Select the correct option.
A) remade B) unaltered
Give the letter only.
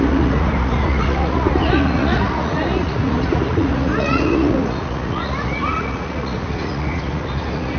A